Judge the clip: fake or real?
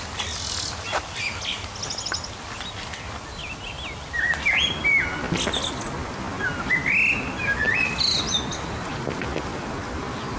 real